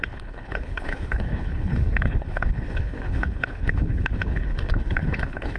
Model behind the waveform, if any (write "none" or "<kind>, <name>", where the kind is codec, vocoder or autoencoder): codec, HILCodec